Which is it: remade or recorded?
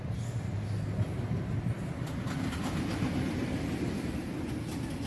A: recorded